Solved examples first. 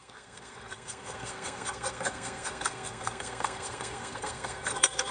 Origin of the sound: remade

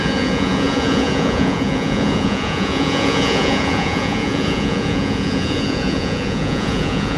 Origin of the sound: remade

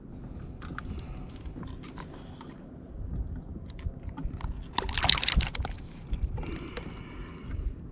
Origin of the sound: recorded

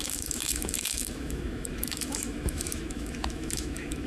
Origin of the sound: remade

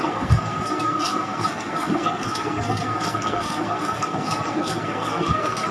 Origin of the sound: remade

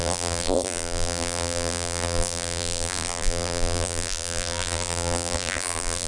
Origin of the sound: remade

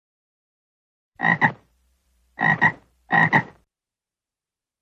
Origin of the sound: remade